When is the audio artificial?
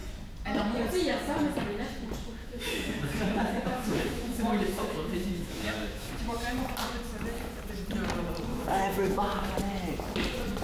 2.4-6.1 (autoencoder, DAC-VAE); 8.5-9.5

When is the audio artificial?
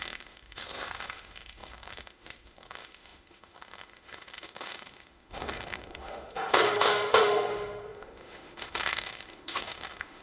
0.0-10.2 (autoencoder, DAC-VAE)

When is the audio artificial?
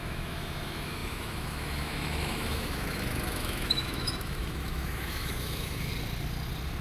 0.0-5.9 (autoencoder, DAC-VAE)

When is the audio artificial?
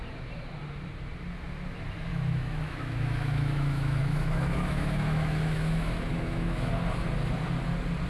2.1-6.7 (autoencoder, DAC-VAE)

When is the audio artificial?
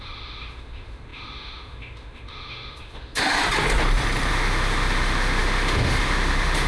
0.0-3.4 (autoencoder, DAC-VAE); 4.3-6.7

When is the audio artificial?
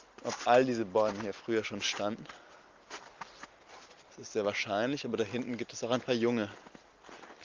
none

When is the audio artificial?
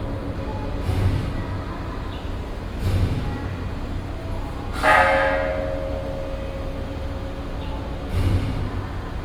none